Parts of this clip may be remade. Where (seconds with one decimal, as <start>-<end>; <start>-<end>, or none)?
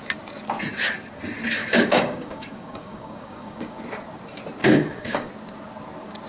1.6-3.8; 4.6-5.3